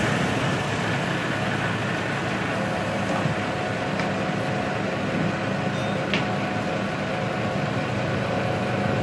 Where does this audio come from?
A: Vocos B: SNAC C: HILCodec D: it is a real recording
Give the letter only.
D